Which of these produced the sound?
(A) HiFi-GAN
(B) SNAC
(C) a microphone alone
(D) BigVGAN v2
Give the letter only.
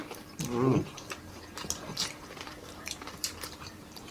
D